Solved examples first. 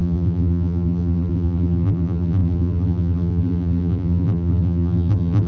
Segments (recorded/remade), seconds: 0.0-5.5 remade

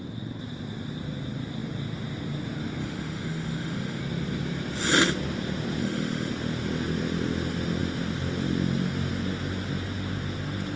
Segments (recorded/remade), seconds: 0.0-2.8 recorded; 2.8-4.0 remade; 4.0-5.8 recorded; 5.8-6.3 remade; 6.3-10.8 recorded

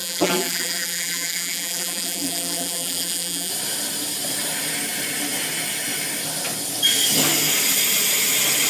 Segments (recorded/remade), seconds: 0.0-3.5 remade; 3.5-8.7 recorded

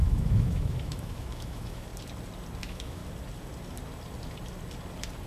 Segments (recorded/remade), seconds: 0.0-1.9 remade; 1.9-2.6 recorded; 2.6-3.0 remade; 3.0-5.3 recorded